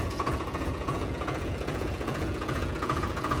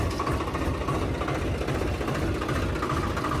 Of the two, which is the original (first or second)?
second